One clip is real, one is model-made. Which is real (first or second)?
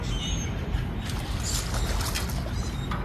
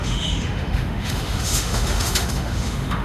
first